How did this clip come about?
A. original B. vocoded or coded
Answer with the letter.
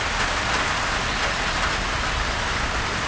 A